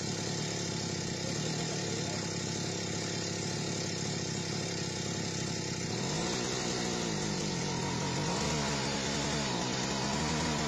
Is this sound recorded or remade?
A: recorded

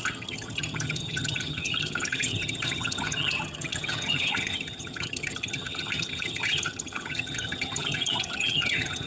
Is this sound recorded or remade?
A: remade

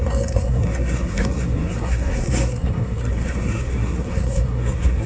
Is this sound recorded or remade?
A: remade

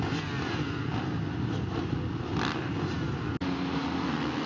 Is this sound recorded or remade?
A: recorded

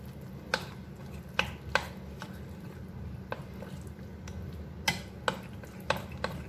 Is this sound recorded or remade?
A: recorded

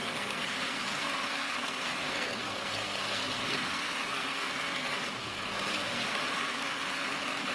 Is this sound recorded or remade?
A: remade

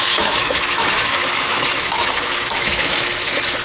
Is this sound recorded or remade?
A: remade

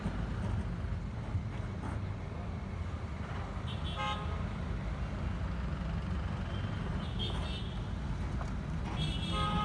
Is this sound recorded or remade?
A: recorded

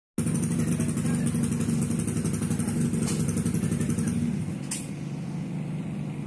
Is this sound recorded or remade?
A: recorded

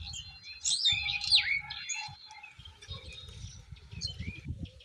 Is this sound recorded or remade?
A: recorded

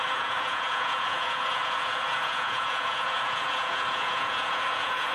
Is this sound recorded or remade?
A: remade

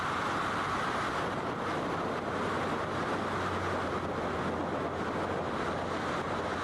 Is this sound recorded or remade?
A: recorded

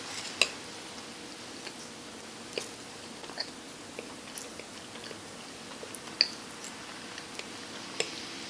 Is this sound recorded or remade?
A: recorded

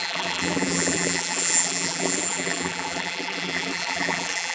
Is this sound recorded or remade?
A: remade